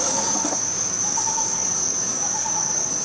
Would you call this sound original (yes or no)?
no